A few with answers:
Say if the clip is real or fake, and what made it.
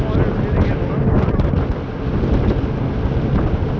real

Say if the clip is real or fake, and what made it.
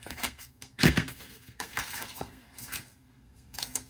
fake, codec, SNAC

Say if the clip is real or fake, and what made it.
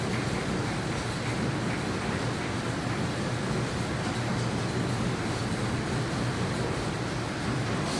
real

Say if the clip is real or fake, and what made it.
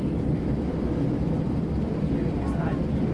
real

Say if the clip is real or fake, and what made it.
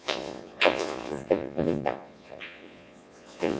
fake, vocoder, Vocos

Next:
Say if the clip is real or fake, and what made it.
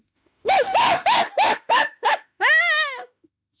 fake, autoencoder, DAC-VAE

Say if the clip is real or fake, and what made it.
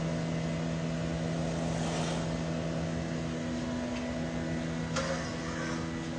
real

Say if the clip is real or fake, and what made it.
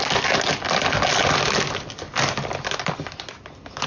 real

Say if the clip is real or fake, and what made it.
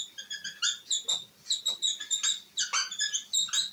real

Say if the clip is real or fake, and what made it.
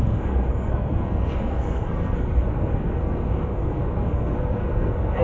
fake, codec, SNAC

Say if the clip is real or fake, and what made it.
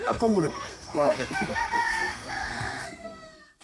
fake, codec, SNAC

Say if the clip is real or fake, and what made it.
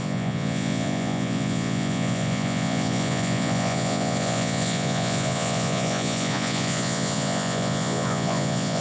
fake, vocoder, Vocos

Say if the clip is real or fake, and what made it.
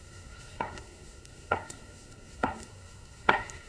fake, codec, SNAC